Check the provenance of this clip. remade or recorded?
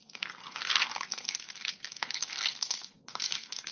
remade